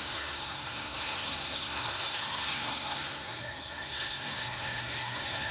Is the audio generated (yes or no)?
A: yes